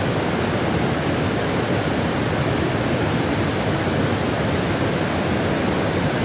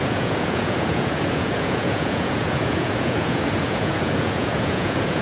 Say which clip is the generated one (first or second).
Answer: second